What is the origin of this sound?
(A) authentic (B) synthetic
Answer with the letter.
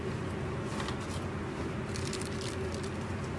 A